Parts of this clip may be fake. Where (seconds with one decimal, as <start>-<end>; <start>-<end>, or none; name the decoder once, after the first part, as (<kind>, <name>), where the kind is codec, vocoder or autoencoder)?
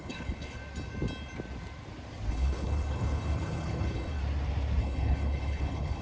0.0-0.6 (codec, HILCodec); 2.3-4.2; 4.8-6.0